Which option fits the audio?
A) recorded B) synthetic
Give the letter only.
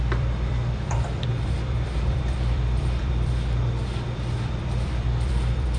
B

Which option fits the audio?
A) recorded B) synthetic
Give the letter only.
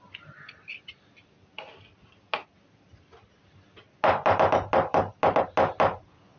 A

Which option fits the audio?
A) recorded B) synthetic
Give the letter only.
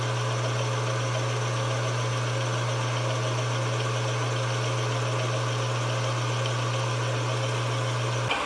A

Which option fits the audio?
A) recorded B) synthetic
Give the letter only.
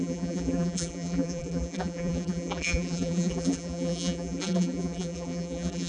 B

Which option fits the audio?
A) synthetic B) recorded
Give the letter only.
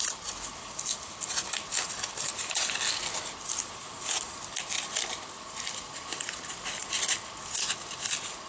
B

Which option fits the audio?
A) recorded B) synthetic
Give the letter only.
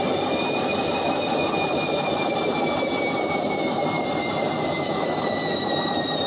B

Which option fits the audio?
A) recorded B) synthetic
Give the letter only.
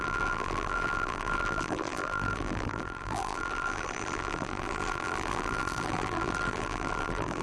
B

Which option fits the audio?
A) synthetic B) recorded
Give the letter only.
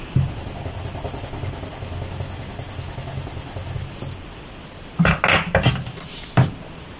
B